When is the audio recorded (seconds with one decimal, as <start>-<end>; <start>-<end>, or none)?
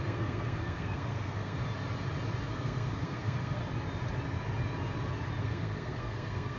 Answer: 1.6-2.5; 3.6-5.4